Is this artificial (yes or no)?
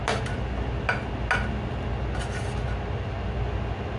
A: no